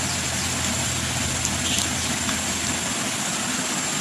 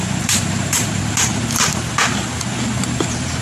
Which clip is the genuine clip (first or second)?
first